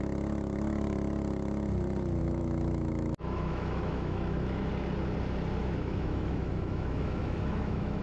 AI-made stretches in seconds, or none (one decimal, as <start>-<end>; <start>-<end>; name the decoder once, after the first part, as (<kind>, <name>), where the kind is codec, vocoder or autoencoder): 2.2-4.7 (autoencoder, DAC-VAE); 5.6-8.0